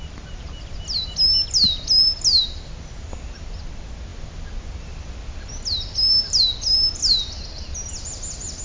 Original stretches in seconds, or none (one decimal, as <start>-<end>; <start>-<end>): 0.0-8.6